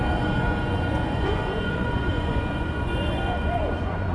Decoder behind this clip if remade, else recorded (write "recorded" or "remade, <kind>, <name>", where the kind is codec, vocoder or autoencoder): remade, vocoder, Vocos